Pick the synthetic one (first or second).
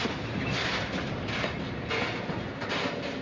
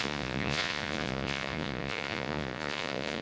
second